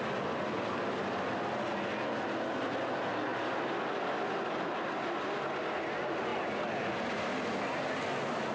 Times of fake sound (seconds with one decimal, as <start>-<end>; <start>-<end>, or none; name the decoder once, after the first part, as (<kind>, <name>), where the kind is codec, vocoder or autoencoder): none